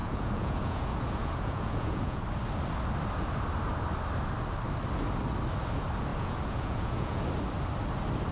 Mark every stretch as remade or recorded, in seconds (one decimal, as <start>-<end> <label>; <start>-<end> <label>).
0.0-2.2 remade; 2.2-6.1 recorded; 6.1-7.2 remade; 7.2-8.3 recorded